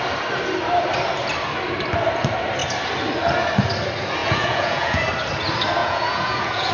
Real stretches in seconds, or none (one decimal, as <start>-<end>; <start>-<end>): 0.0-4.2; 5.0-5.8